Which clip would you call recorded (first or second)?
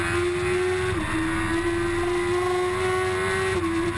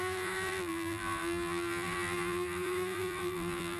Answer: first